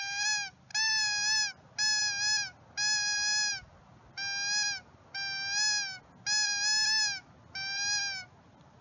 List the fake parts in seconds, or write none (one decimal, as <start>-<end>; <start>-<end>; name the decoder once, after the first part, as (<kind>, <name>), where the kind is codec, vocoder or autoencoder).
none